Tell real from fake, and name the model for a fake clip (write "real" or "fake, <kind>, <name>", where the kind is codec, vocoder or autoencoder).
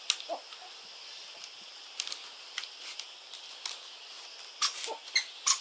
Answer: real